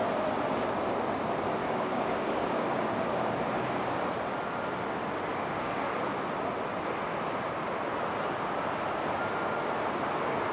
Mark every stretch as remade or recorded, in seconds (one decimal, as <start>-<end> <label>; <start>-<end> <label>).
0.0-1.6 recorded; 1.6-3.3 remade; 3.3-5.3 recorded; 5.3-6.2 remade; 6.2-10.5 recorded